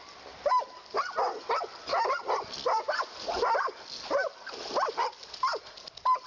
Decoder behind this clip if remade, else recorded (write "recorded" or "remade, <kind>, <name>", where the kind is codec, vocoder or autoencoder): recorded